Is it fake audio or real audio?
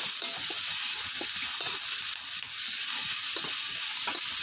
real